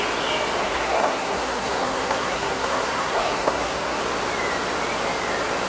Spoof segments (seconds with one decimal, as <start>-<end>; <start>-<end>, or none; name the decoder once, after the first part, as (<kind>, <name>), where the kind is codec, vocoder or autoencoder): 0.6-4.0 (codec, SNAC)